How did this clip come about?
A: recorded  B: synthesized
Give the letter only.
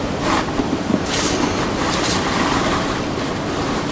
A